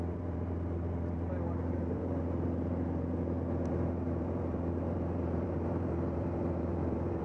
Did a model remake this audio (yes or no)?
yes